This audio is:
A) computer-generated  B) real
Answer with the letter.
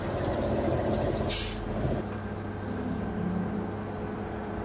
B